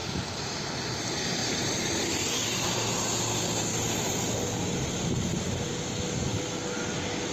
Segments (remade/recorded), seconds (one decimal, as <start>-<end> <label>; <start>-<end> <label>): 0.0-0.8 remade; 0.8-1.4 recorded; 1.4-2.3 remade; 2.3-7.3 recorded